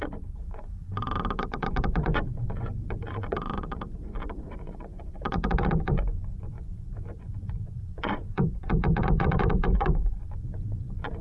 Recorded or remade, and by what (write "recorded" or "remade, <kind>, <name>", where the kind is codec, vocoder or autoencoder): remade, vocoder, Vocos